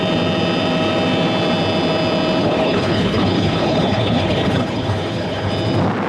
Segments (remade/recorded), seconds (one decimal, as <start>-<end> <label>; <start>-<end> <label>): 0.0-2.4 recorded; 2.4-5.5 remade; 5.5-6.1 recorded